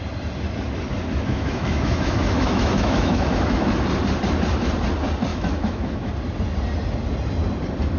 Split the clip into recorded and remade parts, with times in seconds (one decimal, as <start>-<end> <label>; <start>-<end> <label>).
0.0-1.3 recorded; 1.3-3.7 remade; 3.7-5.3 recorded; 5.3-6.1 remade; 6.1-8.0 recorded